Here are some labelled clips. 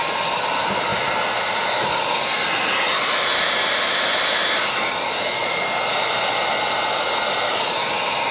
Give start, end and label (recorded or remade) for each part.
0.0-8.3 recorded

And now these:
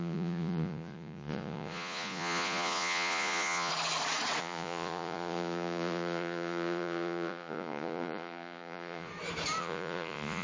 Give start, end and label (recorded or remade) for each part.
0.0-3.7 remade; 3.7-4.4 recorded; 4.4-9.1 remade; 9.1-9.6 recorded; 9.6-10.4 remade